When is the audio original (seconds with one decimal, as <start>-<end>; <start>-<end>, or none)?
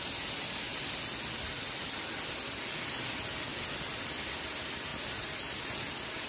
0.0-6.3